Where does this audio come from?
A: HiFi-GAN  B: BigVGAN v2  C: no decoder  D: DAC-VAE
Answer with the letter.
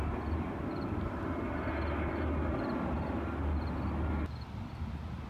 C